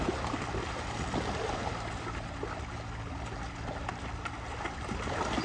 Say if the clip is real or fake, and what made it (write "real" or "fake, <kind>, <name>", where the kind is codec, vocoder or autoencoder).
real